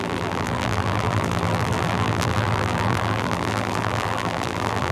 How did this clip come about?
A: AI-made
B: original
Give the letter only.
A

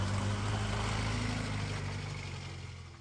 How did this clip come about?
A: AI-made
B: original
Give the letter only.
B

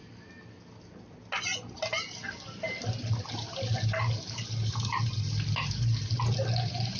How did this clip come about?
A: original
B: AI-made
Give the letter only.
A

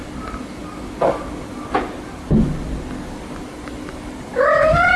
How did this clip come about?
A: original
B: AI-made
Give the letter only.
A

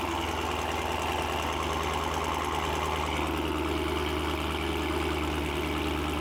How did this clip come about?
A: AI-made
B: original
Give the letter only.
B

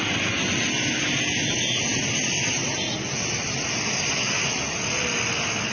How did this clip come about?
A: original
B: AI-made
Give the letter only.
A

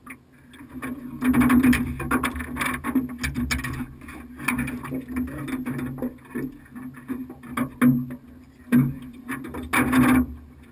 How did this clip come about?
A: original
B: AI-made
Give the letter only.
A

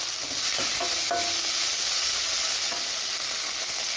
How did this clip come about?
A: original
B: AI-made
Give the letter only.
A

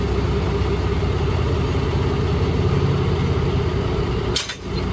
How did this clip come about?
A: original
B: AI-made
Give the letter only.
A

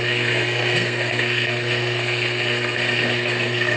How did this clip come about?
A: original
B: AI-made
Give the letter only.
B